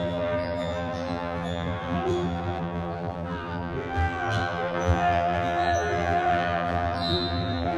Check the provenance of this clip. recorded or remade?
remade